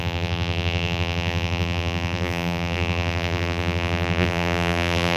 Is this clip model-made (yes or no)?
yes